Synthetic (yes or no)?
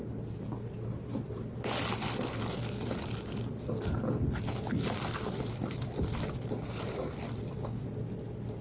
no